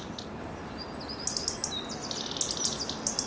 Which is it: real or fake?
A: real